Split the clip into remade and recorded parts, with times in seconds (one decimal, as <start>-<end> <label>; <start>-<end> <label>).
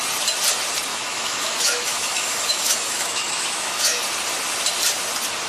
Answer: 0.0-0.9 recorded; 0.9-4.0 remade; 4.0-5.5 recorded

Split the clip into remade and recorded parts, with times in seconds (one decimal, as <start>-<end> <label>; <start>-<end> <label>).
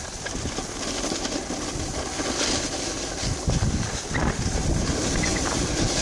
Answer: 0.0-6.0 recorded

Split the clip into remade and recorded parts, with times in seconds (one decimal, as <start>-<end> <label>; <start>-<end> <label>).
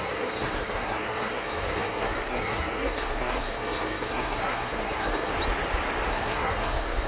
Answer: 0.0-5.3 remade; 5.3-6.1 recorded; 6.1-7.1 remade